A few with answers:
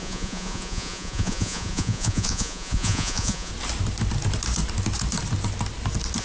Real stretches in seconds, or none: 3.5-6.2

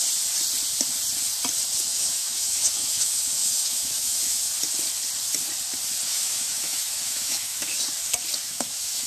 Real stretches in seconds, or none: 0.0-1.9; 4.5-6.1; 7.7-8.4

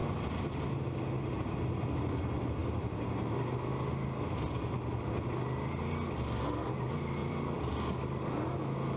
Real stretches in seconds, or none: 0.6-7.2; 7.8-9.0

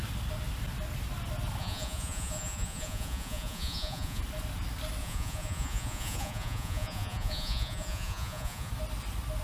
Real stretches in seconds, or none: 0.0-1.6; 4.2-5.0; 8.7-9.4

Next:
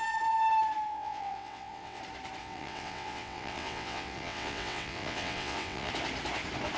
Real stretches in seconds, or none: 0.0-0.9; 2.0-2.4; 5.9-6.8

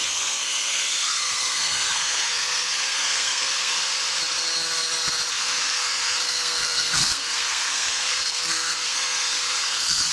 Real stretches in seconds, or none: 3.9-5.3